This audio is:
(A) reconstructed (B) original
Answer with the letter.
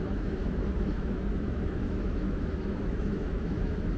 A